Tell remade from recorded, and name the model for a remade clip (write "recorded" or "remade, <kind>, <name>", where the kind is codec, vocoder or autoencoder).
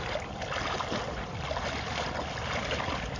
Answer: recorded